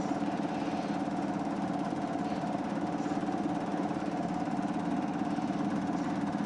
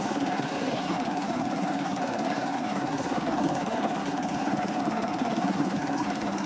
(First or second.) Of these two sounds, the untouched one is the first